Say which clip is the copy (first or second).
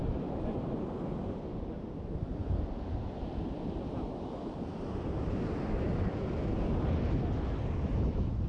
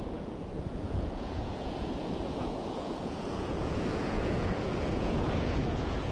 second